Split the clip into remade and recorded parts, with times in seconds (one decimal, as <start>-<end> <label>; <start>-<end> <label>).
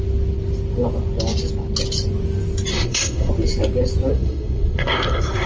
0.0-2.7 recorded; 2.7-3.3 remade; 3.3-4.1 recorded; 4.1-5.5 remade